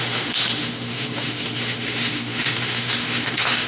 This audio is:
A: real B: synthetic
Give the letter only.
B